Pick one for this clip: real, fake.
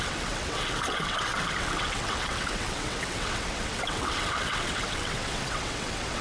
fake